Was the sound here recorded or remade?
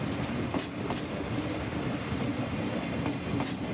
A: recorded